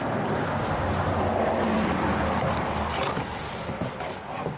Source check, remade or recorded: recorded